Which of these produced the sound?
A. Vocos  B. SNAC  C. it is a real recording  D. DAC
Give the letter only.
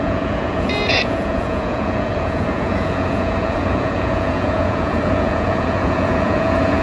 A